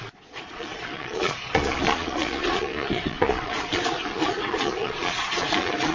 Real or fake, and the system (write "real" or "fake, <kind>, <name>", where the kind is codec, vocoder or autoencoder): fake, vocoder, Vocos